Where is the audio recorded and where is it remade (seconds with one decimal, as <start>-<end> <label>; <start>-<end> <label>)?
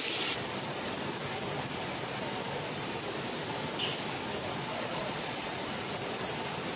0.0-4.6 recorded; 4.6-5.5 remade; 5.5-6.8 recorded